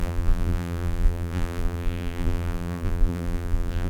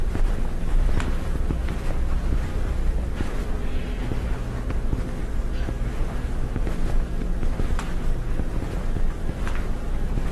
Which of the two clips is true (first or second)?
second